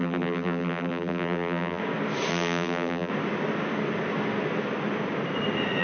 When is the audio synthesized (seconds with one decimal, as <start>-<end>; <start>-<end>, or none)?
0.0-1.8; 2.3-3.1